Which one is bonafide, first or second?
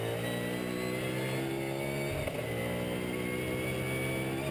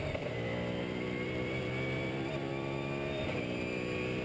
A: first